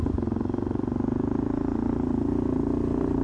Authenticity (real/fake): real